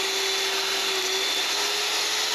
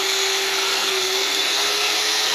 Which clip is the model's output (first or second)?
second